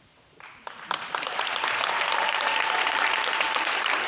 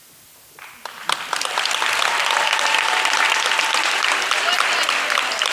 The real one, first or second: second